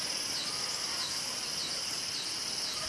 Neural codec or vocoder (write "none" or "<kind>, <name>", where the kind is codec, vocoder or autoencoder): none